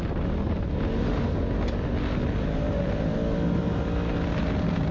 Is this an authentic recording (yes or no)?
yes